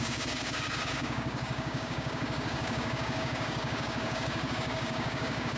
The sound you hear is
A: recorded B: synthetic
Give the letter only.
B